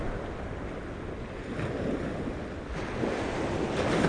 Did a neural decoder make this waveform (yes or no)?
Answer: no